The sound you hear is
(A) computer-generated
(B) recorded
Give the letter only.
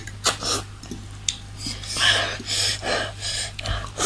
B